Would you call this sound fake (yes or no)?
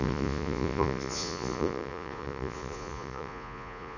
yes